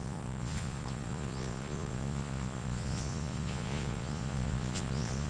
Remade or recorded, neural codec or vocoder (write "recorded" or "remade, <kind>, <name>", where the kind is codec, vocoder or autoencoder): remade, vocoder, Vocos